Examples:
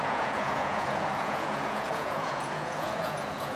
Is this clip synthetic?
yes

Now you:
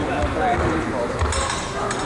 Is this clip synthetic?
no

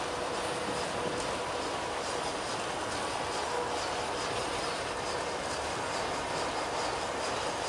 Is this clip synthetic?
no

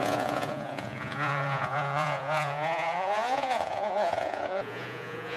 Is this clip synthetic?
yes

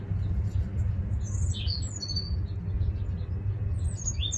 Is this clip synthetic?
no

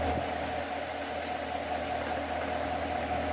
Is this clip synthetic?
no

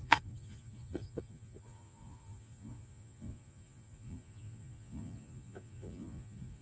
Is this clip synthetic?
yes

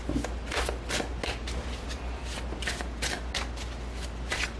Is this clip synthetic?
no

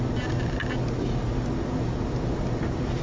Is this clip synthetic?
no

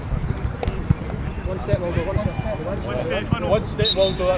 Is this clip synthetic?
no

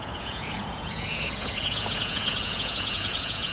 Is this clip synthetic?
yes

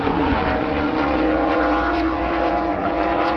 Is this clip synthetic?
yes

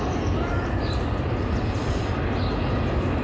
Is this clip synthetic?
no